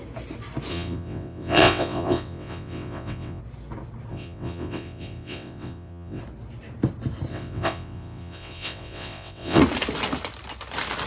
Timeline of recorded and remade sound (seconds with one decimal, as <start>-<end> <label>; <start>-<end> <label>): 0.0-0.7 recorded; 0.7-3.4 remade; 3.4-4.1 recorded; 4.1-6.2 remade; 6.2-7.3 recorded; 7.3-9.6 remade; 9.6-11.1 recorded